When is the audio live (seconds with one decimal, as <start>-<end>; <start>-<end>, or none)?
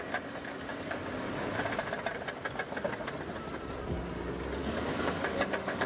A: 0.0-4.6